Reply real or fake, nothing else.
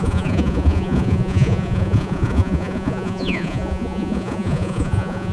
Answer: fake